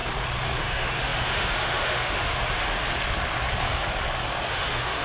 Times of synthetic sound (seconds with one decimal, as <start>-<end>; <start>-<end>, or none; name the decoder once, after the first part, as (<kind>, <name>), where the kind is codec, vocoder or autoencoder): 0.6-2.8 (autoencoder, DAC-VAE); 4.5-5.0